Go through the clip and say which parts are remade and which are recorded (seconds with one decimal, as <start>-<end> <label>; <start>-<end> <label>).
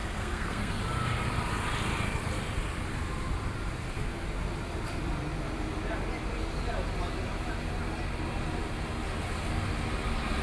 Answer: 0.0-0.8 remade; 0.8-10.4 recorded